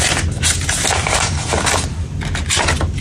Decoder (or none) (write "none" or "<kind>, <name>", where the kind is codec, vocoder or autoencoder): none